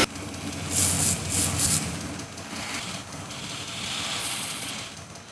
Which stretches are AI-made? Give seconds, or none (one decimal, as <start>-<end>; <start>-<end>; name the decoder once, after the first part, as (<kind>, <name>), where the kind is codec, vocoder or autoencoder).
4.2-4.7 (vocoder, Vocos)